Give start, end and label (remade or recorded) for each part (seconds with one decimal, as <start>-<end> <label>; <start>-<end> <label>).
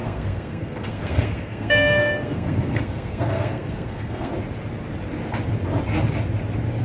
0.0-4.3 remade; 4.3-6.8 recorded